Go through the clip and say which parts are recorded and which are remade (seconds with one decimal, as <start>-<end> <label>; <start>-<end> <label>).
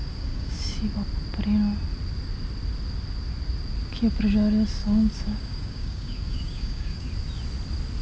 0.0-0.6 remade; 0.6-4.8 recorded; 4.8-7.1 remade; 7.1-8.0 recorded